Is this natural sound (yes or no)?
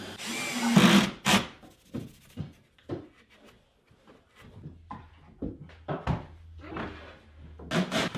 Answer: yes